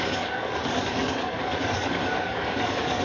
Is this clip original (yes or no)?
no